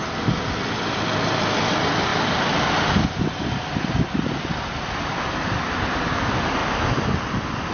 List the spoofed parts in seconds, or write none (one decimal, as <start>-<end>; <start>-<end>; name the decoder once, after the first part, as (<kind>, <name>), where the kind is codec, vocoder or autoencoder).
none